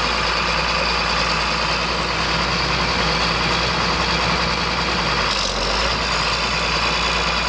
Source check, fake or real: real